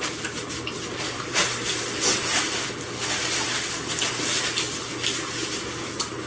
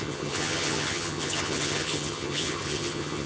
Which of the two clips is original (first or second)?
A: first